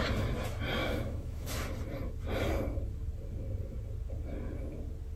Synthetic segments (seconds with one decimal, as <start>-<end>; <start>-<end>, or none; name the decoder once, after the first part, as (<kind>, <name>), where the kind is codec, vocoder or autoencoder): 0.8-1.5 (autoencoder, DAC-VAE)